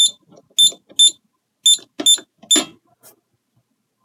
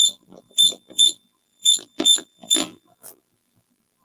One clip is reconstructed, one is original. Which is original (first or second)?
first